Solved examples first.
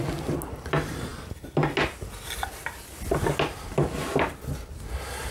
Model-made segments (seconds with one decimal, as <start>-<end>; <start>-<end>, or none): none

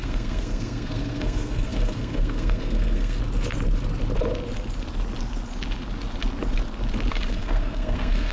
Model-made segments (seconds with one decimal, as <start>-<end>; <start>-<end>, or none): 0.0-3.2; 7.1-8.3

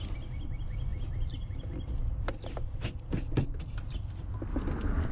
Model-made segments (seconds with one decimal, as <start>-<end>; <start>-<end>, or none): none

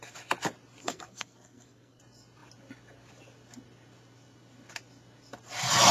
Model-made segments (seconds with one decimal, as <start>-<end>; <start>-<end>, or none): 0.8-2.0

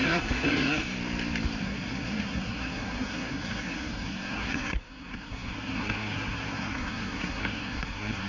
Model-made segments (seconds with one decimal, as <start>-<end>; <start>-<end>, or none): 0.0-0.8; 1.6-8.3